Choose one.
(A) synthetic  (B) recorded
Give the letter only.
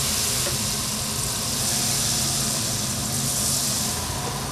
B